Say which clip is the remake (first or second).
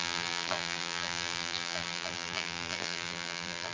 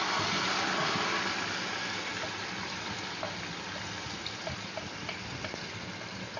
first